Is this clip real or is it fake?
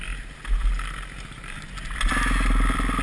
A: real